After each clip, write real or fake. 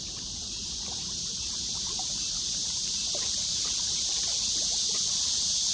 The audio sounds fake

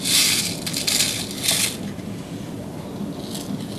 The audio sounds real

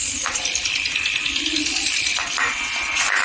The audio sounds fake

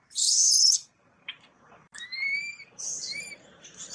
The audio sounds fake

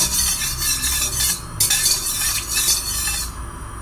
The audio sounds real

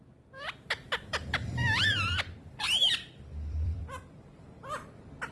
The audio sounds fake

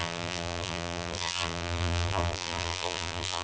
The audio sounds fake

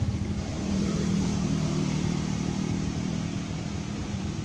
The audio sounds fake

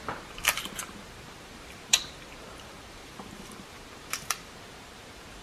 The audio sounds fake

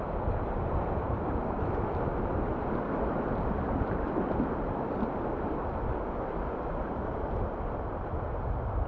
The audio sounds real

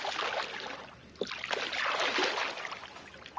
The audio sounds real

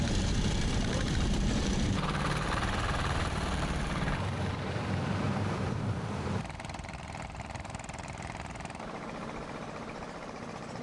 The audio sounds fake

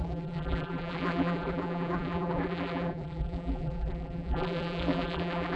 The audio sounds fake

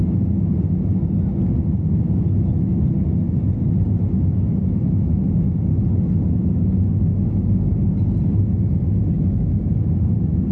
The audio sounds real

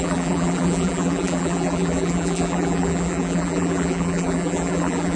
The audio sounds fake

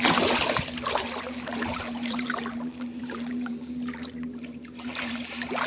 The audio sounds fake